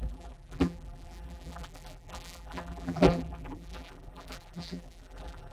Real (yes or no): no